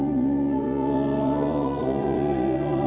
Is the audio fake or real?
fake